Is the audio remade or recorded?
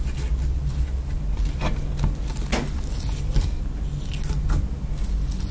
recorded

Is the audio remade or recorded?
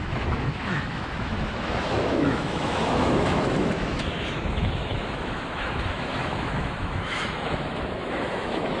remade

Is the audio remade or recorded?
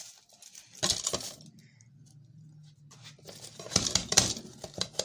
recorded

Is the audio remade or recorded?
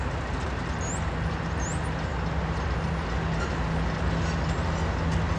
recorded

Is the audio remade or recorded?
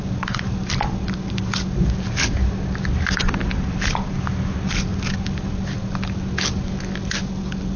recorded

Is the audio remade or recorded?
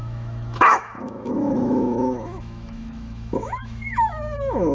remade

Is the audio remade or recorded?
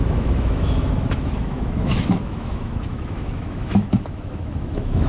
remade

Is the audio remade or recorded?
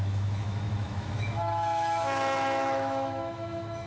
remade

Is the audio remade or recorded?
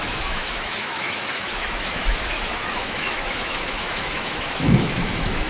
remade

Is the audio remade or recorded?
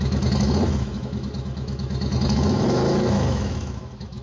remade